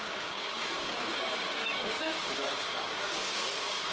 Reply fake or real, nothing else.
fake